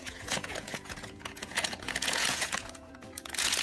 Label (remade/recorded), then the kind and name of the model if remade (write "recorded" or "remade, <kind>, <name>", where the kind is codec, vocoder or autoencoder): remade, vocoder, Vocos